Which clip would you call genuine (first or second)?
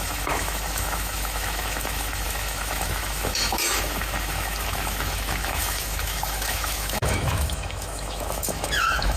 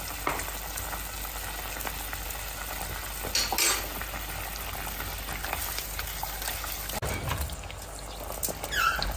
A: second